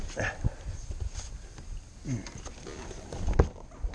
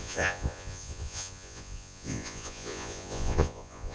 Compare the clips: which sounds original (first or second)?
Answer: first